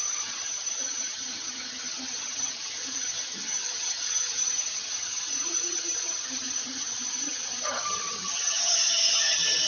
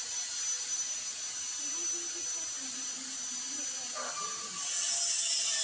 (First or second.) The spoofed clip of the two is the first